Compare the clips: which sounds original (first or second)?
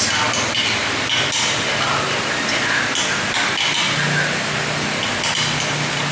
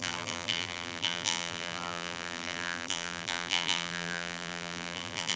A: first